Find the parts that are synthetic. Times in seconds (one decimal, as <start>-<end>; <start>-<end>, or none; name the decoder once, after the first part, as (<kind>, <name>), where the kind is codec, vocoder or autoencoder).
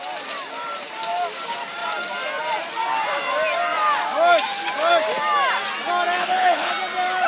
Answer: 6.2-6.7 (codec, HILCodec)